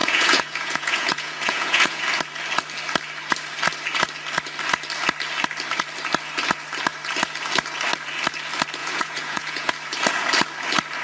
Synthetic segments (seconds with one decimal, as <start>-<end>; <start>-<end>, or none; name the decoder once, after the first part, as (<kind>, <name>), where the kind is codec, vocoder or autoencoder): 0.0-2.0 (vocoder, Vocos); 8.8-9.7